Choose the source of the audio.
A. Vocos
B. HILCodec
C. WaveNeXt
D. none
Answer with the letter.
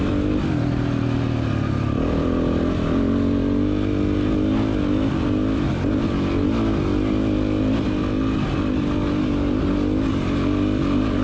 D